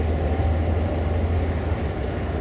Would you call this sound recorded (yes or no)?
yes